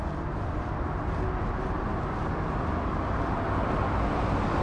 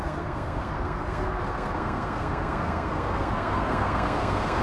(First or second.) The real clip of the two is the first